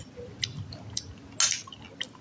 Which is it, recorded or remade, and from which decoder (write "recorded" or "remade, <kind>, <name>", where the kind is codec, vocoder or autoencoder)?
recorded